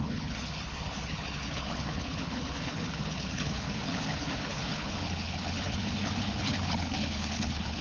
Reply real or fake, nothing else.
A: fake